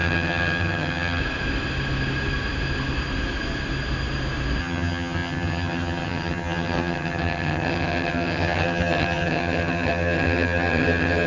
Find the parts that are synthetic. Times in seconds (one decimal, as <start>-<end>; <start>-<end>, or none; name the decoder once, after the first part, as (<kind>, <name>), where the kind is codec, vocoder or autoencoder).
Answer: 0.0-1.2 (vocoder, HiFi-GAN); 4.6-11.3